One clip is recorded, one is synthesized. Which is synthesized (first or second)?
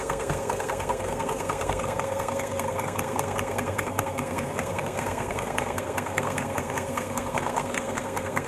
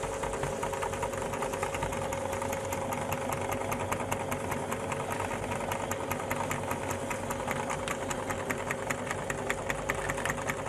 first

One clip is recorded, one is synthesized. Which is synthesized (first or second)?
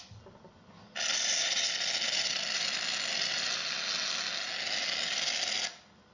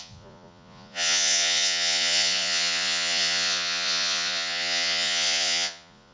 second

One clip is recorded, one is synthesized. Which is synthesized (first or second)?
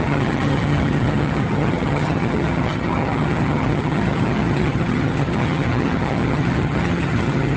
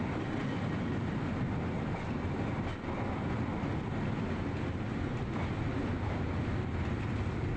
first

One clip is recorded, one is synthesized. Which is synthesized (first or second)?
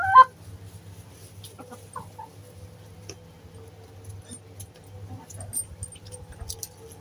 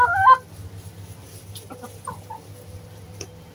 second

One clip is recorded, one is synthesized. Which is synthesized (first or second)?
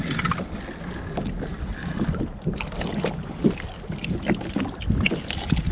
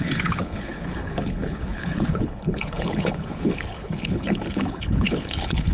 second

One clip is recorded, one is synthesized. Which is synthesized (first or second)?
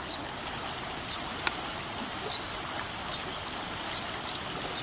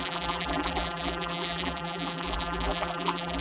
second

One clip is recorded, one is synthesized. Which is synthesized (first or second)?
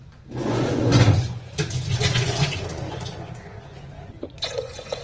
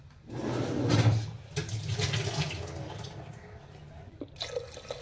first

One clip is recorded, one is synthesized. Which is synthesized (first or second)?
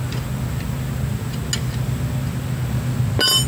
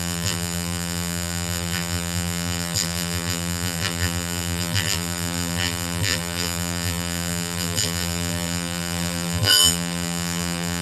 second